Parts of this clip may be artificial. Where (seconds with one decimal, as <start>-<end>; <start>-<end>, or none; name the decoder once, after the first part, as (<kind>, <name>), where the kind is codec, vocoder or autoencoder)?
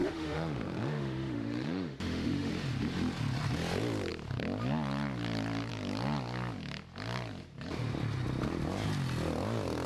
0.0-2.5 (autoencoder, DAC-VAE)